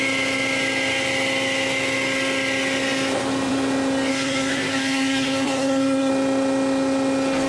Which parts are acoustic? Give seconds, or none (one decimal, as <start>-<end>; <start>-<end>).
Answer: 0.0-4.1; 6.1-7.5